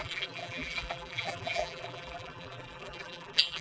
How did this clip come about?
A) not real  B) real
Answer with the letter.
A